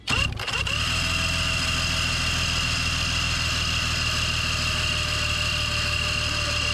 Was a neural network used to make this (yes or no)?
no